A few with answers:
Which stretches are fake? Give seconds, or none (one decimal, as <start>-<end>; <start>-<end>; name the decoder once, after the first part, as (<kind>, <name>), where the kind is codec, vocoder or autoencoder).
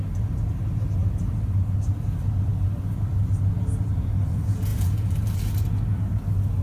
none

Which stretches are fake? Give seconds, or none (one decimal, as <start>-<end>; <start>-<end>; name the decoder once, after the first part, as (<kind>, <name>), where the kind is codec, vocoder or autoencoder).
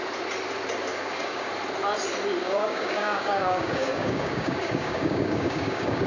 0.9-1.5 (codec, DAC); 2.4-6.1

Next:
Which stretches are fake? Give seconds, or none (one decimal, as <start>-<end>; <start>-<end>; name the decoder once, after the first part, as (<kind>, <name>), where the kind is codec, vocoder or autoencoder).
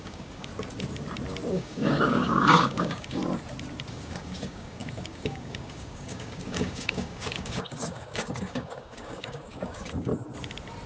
0.0-0.5 (codec, DAC); 1.5-3.2; 3.9-10.1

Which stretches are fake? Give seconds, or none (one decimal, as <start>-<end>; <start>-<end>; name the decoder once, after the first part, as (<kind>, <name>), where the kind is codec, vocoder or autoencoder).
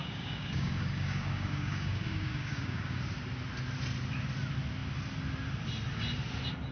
0.0-3.0 (codec, DAC)